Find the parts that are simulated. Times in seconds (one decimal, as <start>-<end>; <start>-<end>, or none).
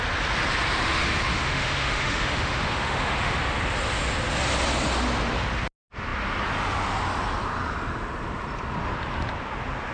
1.3-3.4